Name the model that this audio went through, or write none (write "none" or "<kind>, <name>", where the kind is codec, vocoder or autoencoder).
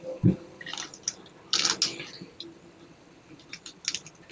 none